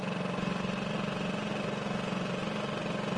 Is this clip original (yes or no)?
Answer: yes